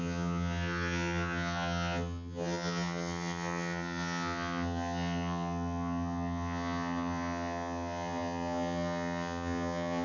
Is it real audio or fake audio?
fake